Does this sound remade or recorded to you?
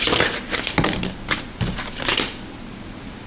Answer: recorded